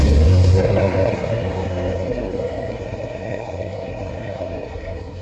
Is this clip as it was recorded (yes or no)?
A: no